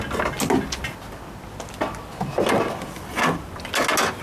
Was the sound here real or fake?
real